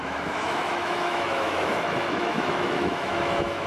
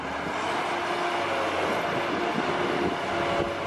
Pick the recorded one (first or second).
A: second